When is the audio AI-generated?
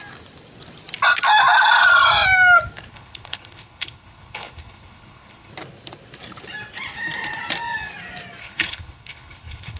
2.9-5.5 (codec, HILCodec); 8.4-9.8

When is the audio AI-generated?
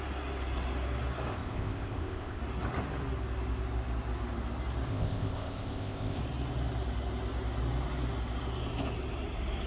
1.3-2.4 (codec, ZipCodec); 4.9-6.2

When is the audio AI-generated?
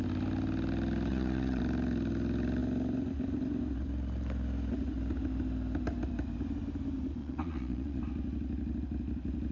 1.1-1.6 (vocoder, Vocos); 7.2-8.0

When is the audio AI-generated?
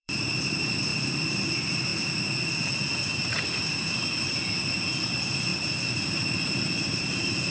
0.0-1.9 (vocoder, BigVGAN v2); 3.2-7.5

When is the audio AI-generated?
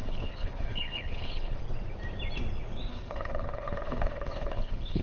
0.0-1.6 (codec, HILCodec); 2.9-5.0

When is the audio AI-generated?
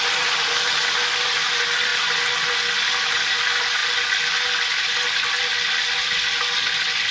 none